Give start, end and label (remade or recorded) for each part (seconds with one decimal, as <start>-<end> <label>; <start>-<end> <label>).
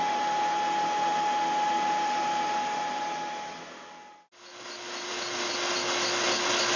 0.0-6.8 recorded